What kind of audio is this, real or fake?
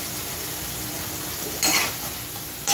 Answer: fake